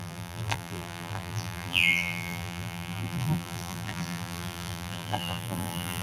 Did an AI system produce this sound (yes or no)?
yes